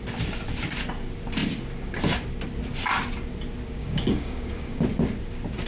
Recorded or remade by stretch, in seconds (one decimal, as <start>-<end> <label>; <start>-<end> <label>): 0.0-3.8 recorded; 3.8-4.8 remade; 4.8-5.7 recorded